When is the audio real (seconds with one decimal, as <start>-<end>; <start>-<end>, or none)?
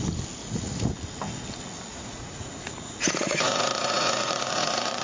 0.0-0.4; 0.9-1.9